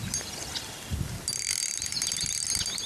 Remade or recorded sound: recorded